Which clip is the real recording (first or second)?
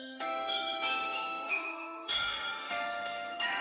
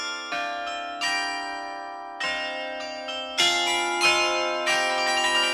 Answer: second